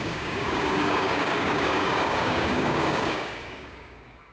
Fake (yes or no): yes